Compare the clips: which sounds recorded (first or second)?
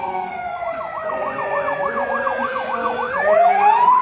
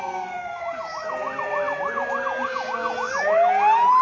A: second